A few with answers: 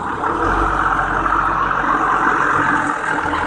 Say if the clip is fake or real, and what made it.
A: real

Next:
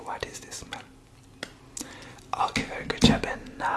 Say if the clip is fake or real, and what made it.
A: real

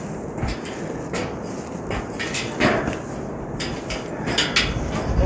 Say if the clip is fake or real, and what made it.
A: real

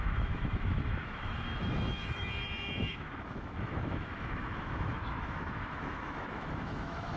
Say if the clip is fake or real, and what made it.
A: fake, autoencoder, DAC-VAE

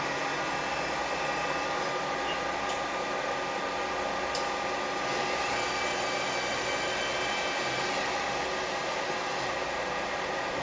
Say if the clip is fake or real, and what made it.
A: real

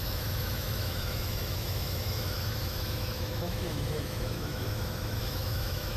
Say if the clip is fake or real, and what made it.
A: fake, autoencoder, DAC-VAE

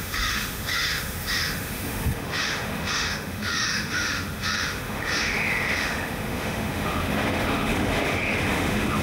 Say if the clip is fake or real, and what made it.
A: fake, autoencoder, DAC-VAE